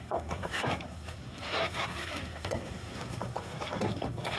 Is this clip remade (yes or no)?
yes